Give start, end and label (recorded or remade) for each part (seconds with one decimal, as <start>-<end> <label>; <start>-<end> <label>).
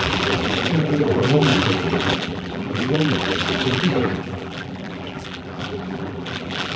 0.0-6.8 remade